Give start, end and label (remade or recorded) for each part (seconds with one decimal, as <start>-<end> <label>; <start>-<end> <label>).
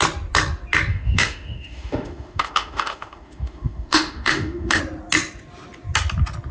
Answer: 0.0-0.9 recorded; 0.9-4.8 remade; 4.8-6.5 recorded